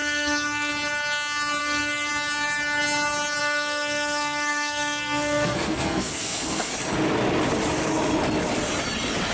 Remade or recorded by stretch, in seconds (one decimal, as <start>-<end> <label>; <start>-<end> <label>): 0.0-0.7 remade; 0.7-1.6 recorded; 1.6-2.1 remade; 2.1-3.4 recorded; 3.4-6.7 remade; 6.7-9.3 recorded